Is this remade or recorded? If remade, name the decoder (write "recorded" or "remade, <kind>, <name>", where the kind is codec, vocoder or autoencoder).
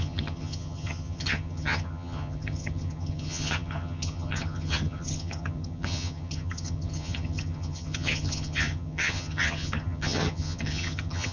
remade, vocoder, HiFi-GAN